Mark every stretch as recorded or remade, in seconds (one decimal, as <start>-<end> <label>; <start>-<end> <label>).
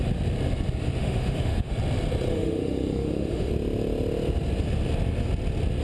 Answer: 0.0-1.0 recorded; 1.0-1.7 remade; 1.7-2.3 recorded; 2.3-3.5 remade; 3.5-5.8 recorded